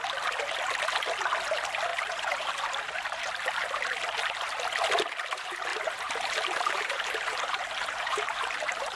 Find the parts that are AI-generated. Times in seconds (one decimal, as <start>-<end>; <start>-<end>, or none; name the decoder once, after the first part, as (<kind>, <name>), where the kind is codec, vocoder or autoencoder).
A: 1.9-3.3 (vocoder, BigVGAN v2); 5.7-9.0